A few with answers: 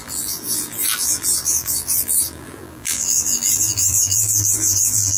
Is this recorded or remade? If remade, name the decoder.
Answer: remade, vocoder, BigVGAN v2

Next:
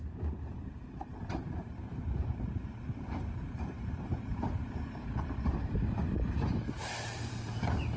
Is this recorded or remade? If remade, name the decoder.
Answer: remade, vocoder, BigVGAN v2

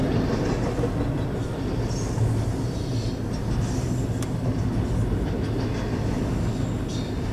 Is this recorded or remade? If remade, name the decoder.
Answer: recorded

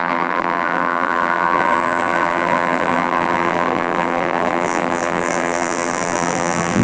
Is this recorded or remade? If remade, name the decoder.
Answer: remade, vocoder, BigVGAN v2